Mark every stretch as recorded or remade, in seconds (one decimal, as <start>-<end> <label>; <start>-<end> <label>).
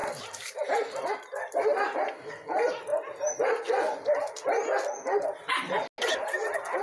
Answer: 0.0-6.8 recorded